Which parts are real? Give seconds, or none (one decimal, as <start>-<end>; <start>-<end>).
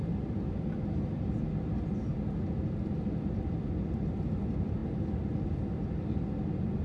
0.0-6.8